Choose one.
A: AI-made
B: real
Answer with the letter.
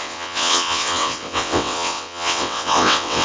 A